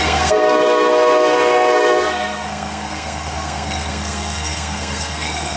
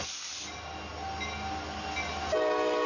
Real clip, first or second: second